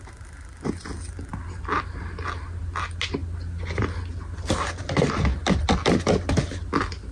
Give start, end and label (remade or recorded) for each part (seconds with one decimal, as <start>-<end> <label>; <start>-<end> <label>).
0.0-7.1 recorded